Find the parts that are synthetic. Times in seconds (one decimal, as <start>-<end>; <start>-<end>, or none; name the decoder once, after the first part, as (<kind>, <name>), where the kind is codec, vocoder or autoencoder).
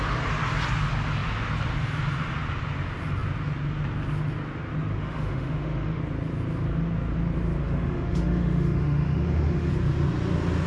5.0-6.0 (autoencoder, DAC-VAE); 7.6-9.7